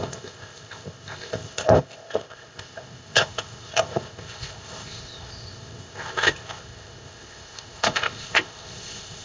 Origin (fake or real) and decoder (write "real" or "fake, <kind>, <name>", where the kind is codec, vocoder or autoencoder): fake, codec, ZipCodec